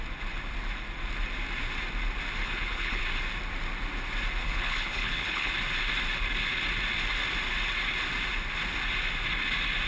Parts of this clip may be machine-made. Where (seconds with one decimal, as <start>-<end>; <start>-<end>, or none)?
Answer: 2.4-3.0; 4.4-5.5